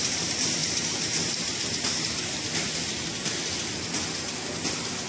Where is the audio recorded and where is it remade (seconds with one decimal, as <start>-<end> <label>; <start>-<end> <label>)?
0.0-5.1 recorded